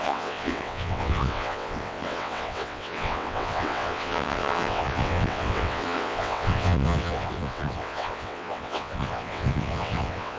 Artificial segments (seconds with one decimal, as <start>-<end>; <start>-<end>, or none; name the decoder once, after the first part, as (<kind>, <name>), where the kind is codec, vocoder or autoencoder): 0.0-10.4 (vocoder, WaveNeXt)